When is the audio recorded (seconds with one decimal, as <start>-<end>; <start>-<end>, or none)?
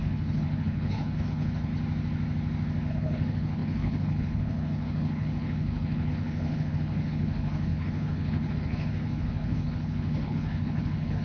1.7-2.9